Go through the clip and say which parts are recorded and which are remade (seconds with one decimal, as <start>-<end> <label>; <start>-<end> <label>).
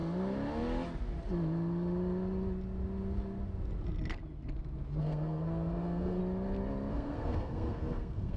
0.0-5.0 recorded; 5.0-6.2 remade; 6.2-6.9 recorded; 6.9-8.4 remade